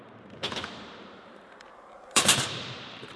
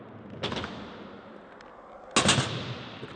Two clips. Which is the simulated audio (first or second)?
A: first